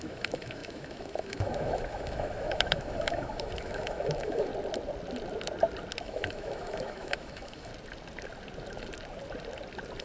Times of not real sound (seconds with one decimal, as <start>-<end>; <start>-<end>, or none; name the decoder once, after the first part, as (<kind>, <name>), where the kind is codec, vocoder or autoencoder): 0.0-4.5 (autoencoder, DAC-VAE); 6.0-7.7